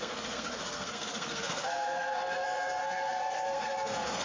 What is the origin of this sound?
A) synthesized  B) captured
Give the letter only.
A